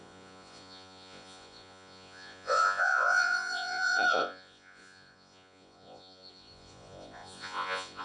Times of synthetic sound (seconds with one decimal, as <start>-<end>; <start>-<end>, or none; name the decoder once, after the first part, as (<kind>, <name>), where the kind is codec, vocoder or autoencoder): 0.0-8.0 (vocoder, Vocos)